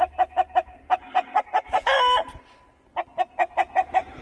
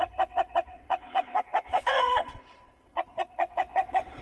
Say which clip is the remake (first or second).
second